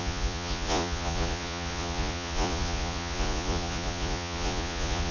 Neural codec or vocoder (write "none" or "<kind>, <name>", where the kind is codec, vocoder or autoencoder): vocoder, Vocos